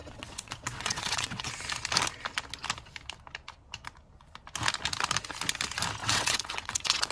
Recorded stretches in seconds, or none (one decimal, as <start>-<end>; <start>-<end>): 1.5-6.0